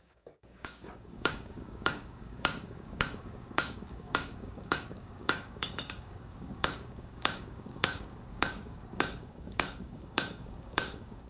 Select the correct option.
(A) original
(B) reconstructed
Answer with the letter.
B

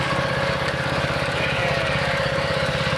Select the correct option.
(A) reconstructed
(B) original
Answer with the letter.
A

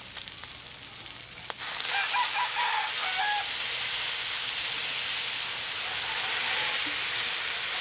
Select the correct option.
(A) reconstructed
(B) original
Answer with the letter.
B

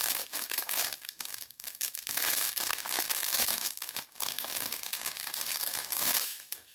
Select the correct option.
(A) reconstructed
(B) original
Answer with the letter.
A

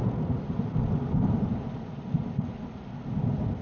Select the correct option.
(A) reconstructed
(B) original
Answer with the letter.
B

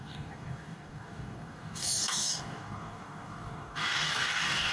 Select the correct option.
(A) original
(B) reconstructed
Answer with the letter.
B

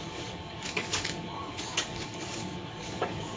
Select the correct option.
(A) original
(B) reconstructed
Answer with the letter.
B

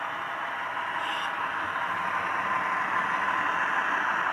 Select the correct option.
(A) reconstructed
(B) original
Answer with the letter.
B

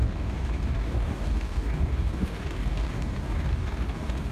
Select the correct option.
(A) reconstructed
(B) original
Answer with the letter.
A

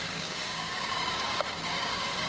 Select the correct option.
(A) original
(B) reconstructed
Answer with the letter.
B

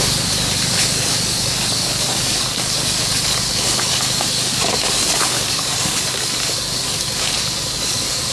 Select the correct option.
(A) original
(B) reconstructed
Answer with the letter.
B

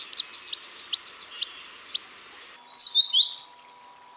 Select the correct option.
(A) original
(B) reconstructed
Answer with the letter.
A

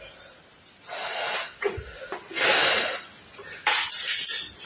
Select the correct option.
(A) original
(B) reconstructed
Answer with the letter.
A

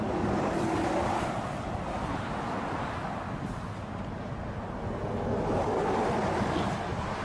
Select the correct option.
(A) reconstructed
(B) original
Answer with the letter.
B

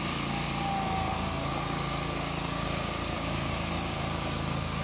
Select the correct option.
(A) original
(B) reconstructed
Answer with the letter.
B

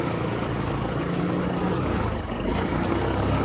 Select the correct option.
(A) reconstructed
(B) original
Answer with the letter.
A